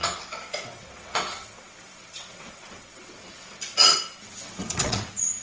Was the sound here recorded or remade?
remade